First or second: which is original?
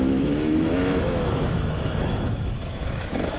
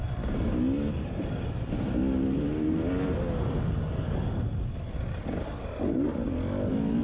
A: second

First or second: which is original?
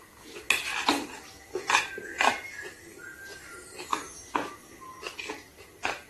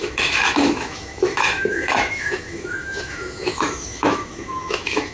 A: first